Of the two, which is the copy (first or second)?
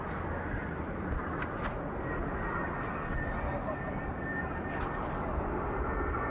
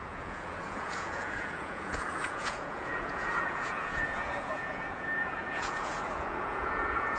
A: second